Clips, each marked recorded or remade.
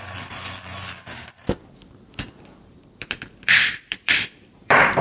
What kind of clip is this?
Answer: remade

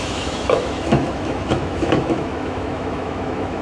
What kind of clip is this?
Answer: remade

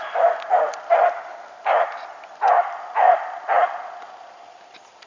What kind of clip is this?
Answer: recorded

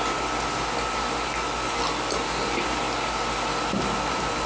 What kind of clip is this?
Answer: recorded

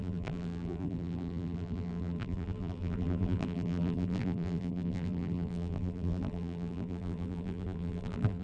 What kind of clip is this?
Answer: remade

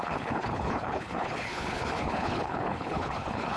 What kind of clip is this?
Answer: remade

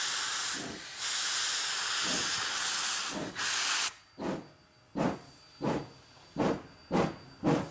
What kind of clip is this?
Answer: recorded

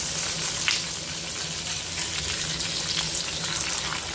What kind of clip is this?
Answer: recorded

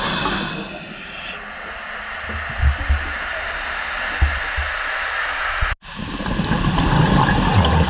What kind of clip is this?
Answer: recorded